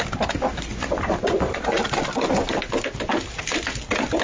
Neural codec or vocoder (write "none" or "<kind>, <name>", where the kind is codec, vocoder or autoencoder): none